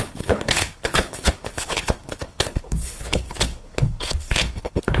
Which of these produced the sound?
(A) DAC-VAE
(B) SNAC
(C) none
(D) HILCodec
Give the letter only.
D